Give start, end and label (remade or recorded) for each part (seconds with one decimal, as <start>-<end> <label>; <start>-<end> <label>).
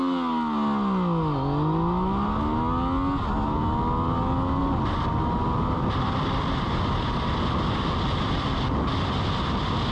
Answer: 0.0-9.9 recorded